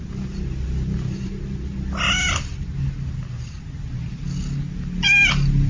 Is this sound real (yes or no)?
yes